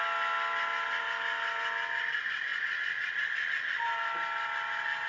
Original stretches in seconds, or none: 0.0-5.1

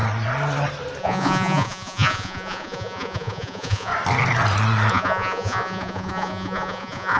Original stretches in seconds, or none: 0.0-1.0; 3.9-4.9

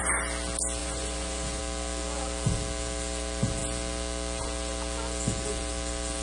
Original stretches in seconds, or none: 0.0-0.8; 1.6-6.2

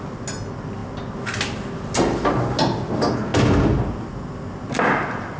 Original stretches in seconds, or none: 0.0-5.4